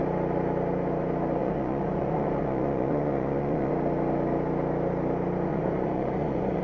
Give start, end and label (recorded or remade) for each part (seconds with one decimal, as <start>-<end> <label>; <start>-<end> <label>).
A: 0.0-1.4 recorded; 1.4-3.7 remade; 3.7-5.5 recorded; 5.5-6.6 remade